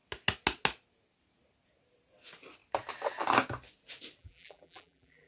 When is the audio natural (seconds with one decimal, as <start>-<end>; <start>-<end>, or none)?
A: 0.0-4.2